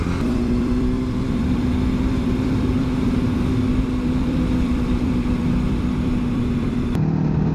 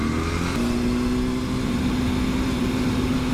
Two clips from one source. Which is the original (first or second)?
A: second